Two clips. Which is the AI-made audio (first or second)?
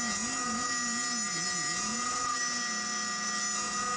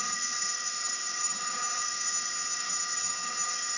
second